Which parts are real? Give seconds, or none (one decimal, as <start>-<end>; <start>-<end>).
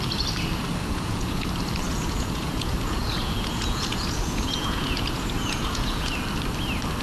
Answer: 0.0-0.8; 1.5-1.9; 6.1-7.0